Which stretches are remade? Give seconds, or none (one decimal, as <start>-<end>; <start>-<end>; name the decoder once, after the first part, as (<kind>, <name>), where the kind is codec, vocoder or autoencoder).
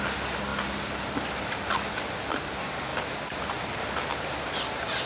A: none